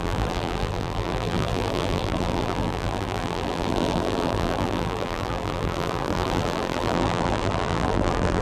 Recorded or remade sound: remade